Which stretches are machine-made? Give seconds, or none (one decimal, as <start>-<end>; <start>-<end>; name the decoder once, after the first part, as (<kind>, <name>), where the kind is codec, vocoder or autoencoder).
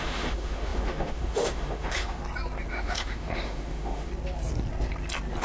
0.0-2.2 (autoencoder, DAC-VAE); 2.7-4.1